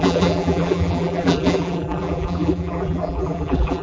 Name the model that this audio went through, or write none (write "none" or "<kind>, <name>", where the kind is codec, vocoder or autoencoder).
vocoder, BigVGAN v2